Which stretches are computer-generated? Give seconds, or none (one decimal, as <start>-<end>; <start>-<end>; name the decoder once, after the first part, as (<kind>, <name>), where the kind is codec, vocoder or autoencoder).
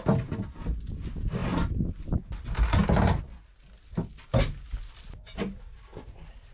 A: none